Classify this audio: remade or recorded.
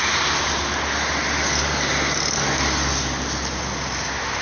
recorded